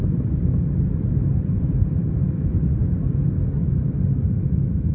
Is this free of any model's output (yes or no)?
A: yes